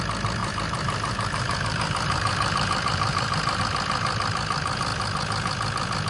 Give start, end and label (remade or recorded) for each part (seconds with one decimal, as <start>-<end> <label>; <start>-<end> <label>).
0.0-0.4 recorded; 0.4-3.6 remade; 3.6-6.1 recorded